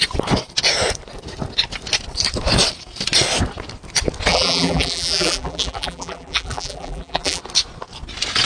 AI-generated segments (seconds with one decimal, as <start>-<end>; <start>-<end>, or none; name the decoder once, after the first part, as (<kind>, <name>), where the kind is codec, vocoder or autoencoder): 4.3-7.4 (vocoder, BigVGAN v2)